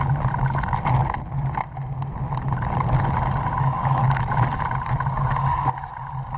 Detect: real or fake real